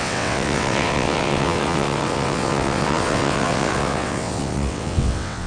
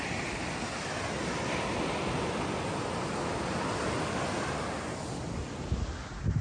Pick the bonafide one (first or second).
second